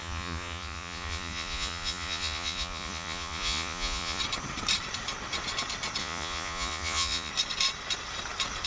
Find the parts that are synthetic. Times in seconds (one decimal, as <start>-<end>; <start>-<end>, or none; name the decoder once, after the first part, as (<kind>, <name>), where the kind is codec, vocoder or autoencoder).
0.0-4.2 (vocoder, Vocos); 6.0-7.3